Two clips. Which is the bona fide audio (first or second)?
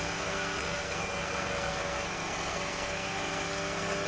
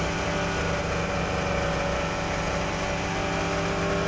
second